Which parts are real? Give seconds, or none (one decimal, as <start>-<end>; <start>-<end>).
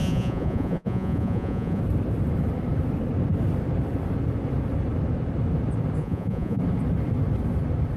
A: 1.8-6.0; 6.6-8.0